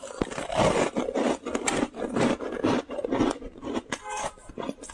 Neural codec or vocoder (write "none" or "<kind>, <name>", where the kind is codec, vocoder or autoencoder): none